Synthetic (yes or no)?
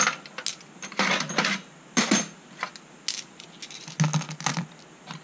no